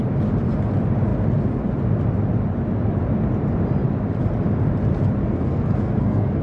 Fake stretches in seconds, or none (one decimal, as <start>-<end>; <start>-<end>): 5.2-6.4